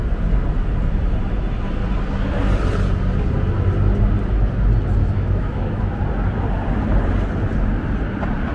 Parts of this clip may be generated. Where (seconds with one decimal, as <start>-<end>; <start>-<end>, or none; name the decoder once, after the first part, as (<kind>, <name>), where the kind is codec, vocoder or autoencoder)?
5.0-6.0 (autoencoder, DAC-VAE)